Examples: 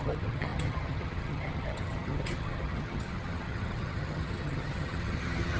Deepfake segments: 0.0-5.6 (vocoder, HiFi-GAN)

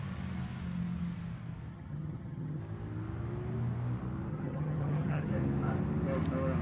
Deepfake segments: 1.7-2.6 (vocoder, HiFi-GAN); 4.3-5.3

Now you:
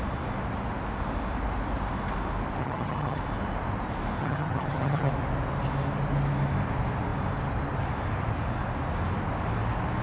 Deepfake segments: 2.6-3.2 (vocoder, HiFi-GAN); 4.2-5.1

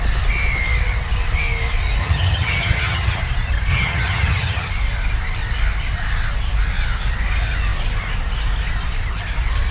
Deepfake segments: 2.0-3.2 (vocoder, HiFi-GAN); 3.7-4.7

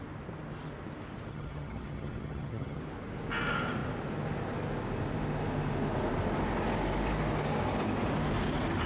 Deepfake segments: 1.3-2.8 (vocoder, HiFi-GAN)

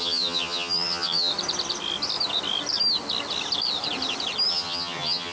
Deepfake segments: 0.0-1.3 (vocoder, HiFi-GAN); 4.5-5.3